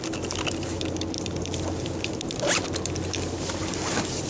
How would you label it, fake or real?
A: real